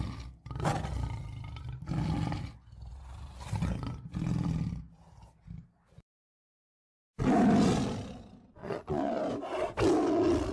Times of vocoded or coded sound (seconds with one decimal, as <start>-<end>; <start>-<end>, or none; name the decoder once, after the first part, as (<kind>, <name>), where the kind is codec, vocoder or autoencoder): 8.6-9.2 (vocoder, Vocos)